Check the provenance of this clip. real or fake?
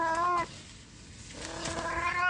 real